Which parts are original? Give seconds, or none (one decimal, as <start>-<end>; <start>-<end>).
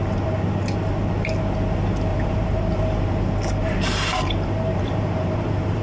0.0-2.1